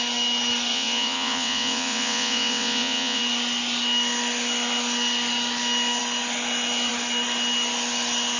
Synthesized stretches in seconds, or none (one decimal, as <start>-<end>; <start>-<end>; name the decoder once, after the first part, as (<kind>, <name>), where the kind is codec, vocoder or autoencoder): 0.7-3.2 (vocoder, WaveNeXt)